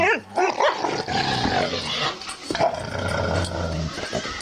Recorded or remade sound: recorded